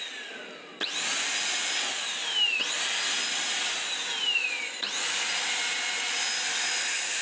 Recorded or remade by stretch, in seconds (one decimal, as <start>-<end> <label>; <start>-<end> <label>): 0.0-7.2 recorded